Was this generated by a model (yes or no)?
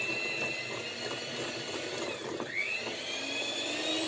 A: no